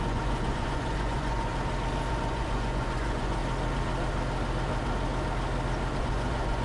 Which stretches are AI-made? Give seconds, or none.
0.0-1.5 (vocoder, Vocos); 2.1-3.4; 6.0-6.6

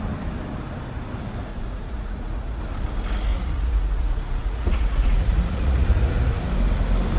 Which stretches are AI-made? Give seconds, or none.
1.5-2.6 (vocoder, Vocos); 3.3-6.4

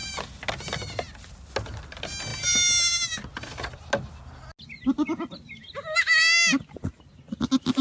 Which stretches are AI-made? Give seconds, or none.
none